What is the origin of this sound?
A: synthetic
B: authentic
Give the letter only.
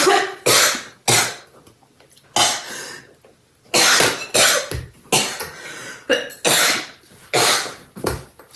B